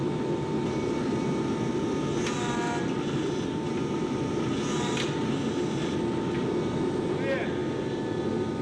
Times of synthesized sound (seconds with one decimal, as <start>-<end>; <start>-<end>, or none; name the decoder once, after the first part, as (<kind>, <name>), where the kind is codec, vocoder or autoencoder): none